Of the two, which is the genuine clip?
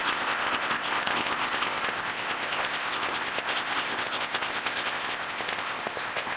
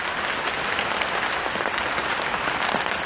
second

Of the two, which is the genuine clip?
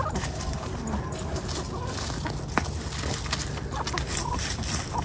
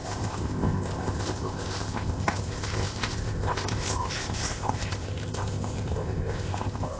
first